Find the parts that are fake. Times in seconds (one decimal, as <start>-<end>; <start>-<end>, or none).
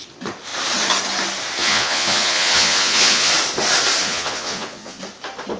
1.6-3.3; 4.0-5.0